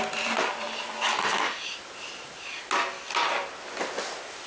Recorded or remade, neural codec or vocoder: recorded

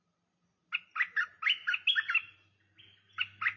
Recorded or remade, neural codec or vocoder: recorded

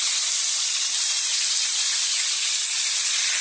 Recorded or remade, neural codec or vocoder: remade, vocoder, Vocos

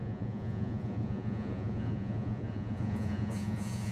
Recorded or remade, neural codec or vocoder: remade, vocoder, Vocos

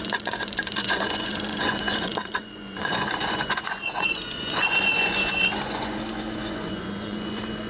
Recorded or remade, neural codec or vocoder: remade, vocoder, Vocos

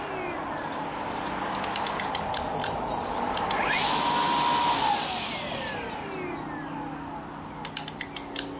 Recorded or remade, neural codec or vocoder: recorded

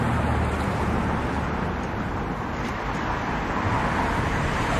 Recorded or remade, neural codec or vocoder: recorded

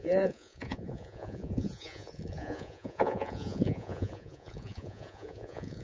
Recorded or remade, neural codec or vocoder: remade, vocoder, Vocos